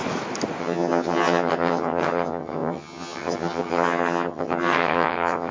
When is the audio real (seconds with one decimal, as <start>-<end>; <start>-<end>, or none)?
0.0-0.6